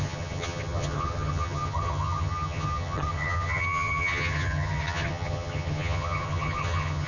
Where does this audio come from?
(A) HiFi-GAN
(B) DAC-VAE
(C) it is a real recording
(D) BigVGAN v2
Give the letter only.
A